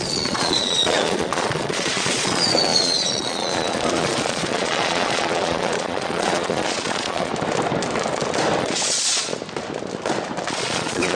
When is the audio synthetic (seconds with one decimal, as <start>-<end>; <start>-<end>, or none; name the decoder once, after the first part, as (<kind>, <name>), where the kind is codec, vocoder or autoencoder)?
0.0-7.3 (vocoder, Vocos); 8.6-9.3; 10.5-11.1